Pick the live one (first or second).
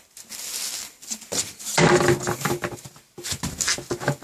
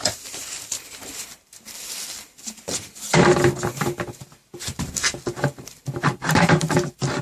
first